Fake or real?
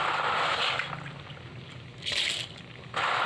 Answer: real